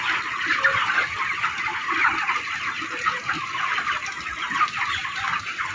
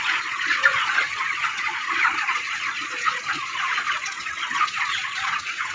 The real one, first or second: first